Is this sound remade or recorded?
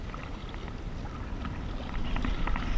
recorded